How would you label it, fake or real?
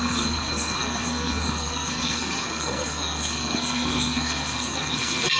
fake